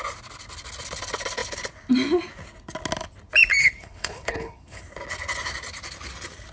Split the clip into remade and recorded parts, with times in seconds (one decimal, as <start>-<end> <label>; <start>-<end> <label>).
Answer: 0.0-3.6 recorded; 3.6-4.8 remade; 4.8-6.5 recorded